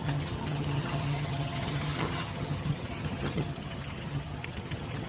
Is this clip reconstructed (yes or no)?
yes